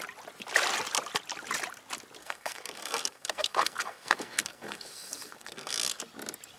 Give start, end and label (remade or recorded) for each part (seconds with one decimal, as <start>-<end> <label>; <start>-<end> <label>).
0.0-2.2 recorded; 2.2-6.0 remade; 6.0-6.6 recorded